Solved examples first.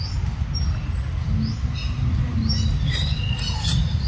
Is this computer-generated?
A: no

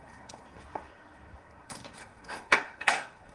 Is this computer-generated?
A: yes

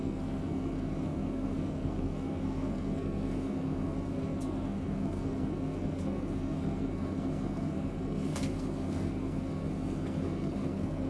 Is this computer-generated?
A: yes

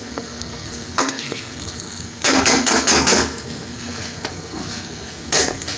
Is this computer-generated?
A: yes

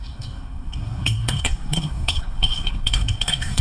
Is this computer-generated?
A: yes